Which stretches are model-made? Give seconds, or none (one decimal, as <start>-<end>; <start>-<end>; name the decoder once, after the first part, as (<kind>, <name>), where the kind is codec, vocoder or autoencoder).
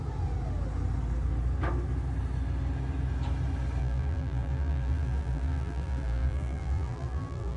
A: 3.8-7.6 (vocoder, BigVGAN v2)